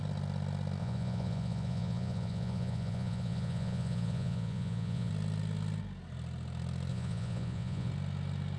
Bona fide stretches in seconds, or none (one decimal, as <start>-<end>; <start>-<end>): 0.0-0.8; 5.1-6.9; 7.9-8.6